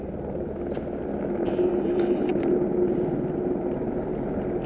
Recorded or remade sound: recorded